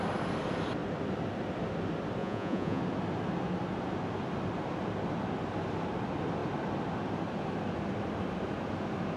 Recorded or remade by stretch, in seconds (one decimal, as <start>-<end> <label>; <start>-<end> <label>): 0.0-2.2 recorded; 2.2-2.8 remade; 2.8-9.2 recorded